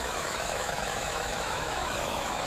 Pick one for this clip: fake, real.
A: fake